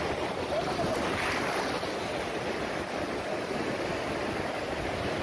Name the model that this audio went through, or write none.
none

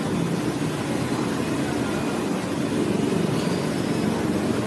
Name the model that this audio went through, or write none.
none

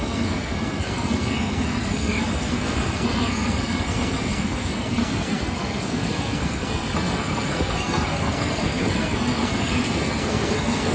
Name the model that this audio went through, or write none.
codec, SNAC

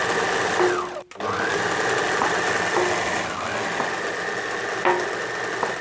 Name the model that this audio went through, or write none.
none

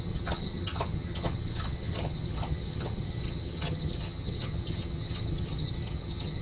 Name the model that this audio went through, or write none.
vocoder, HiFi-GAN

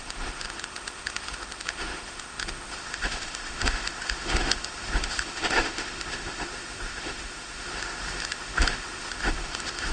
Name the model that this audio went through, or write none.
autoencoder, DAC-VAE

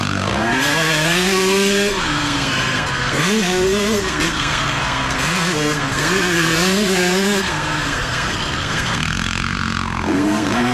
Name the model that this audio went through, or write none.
codec, SNAC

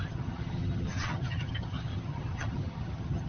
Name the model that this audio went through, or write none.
vocoder, HiFi-GAN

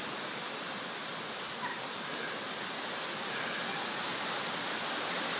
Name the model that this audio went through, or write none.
none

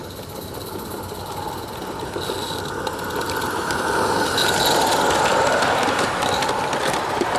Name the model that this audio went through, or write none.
none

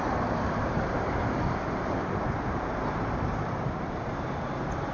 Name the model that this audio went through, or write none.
vocoder, BigVGAN v2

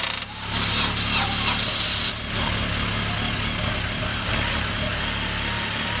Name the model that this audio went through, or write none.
none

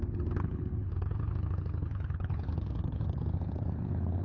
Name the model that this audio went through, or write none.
codec, HILCodec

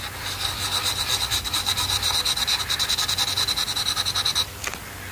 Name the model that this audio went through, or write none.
none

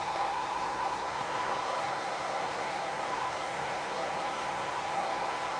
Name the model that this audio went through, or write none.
codec, SNAC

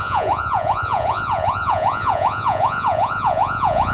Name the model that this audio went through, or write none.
vocoder, Vocos